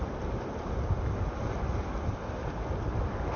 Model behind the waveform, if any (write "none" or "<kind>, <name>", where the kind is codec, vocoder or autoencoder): none